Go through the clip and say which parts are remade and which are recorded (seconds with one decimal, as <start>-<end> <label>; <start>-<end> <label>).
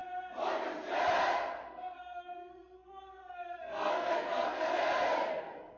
0.0-1.3 recorded; 1.3-4.8 remade; 4.8-5.3 recorded; 5.3-5.8 remade